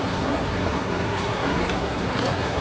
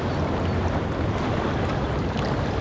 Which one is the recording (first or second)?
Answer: second